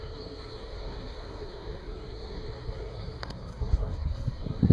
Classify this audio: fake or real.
fake